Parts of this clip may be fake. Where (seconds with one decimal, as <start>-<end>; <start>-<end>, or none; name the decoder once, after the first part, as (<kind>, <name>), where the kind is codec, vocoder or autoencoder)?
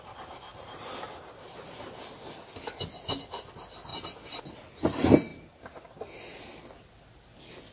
0.5-1.6 (vocoder, BigVGAN v2)